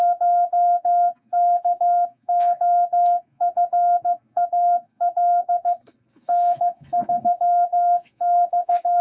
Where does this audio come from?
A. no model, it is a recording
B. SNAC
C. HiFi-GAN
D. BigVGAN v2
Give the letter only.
B